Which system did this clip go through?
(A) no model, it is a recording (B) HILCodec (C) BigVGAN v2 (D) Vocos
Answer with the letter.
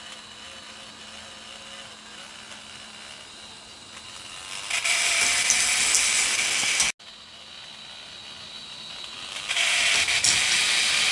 A